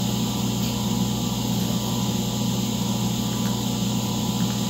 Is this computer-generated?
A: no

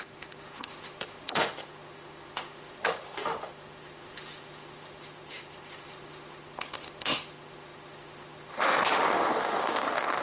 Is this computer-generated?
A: yes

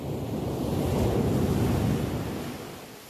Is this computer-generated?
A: no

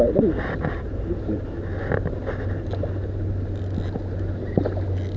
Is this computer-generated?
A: no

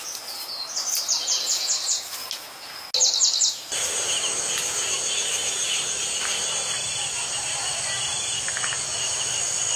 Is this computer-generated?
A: no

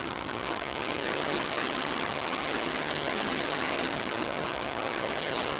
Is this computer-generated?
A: yes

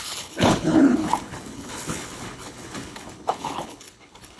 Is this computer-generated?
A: yes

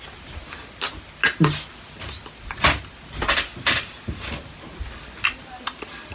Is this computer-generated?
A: no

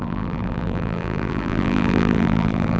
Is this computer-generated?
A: yes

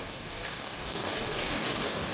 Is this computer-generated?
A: yes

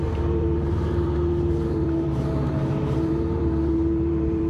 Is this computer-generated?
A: yes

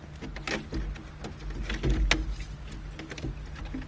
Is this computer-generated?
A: no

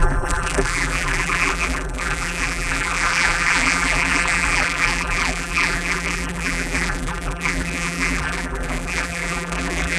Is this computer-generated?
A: yes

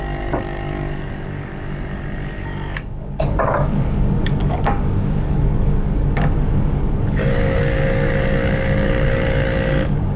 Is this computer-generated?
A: yes